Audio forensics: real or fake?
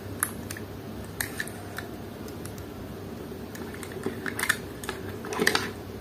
real